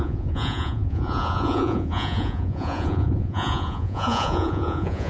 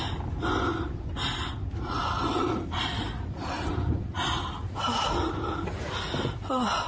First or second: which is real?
second